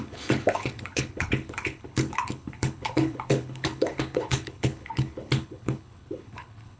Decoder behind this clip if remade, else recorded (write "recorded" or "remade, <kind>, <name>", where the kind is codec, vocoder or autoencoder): remade, codec, HILCodec